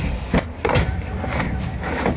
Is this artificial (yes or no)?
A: no